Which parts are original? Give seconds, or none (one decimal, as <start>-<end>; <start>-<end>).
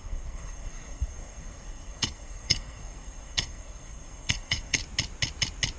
4.8-5.8